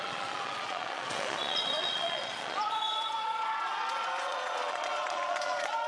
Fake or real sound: fake